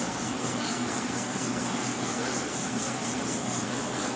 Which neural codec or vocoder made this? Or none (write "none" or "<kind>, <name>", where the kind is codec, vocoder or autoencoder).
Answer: codec, SNAC